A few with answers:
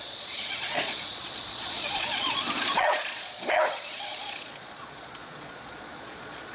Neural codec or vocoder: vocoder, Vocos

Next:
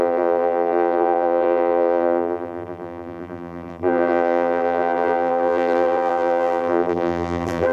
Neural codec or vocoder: vocoder, BigVGAN v2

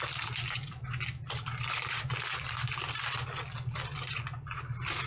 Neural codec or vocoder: vocoder, BigVGAN v2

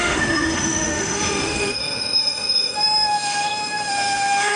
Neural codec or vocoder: autoencoder, DAC-VAE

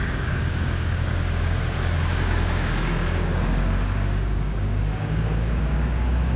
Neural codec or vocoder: codec, DAC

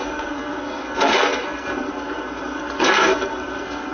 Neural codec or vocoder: codec, SNAC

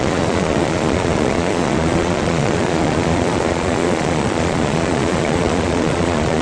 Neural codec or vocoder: vocoder, Vocos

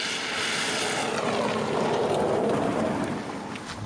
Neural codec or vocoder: none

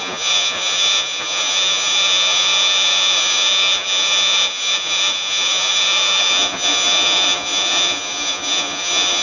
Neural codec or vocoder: vocoder, Vocos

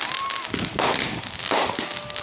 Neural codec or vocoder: none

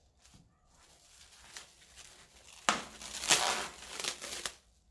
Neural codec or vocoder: none